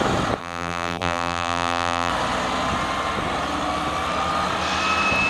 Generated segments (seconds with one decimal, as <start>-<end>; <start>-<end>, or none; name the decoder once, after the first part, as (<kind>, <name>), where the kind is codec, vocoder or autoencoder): 0.4-2.1 (vocoder, BigVGAN v2)